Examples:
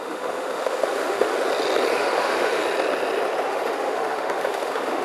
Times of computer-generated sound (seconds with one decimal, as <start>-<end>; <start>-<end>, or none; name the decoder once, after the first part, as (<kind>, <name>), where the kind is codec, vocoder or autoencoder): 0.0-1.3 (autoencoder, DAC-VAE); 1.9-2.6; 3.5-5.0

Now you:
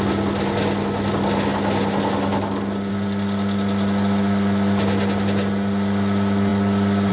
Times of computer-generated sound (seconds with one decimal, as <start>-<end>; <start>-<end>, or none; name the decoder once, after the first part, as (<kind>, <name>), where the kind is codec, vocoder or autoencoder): none

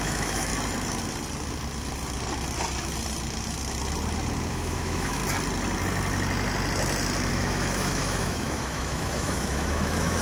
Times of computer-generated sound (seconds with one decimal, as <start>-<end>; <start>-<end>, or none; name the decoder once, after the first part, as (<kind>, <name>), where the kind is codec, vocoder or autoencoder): 0.0-0.5 (autoencoder, DAC-VAE); 4.5-5.2; 7.3-10.2